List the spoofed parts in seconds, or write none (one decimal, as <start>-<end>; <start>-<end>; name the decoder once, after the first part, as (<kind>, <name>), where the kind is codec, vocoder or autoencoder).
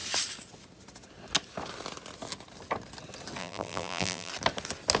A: 3.4-4.3 (vocoder, BigVGAN v2)